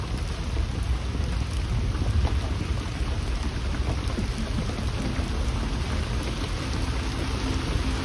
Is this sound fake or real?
real